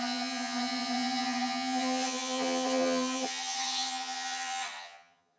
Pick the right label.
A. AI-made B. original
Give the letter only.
A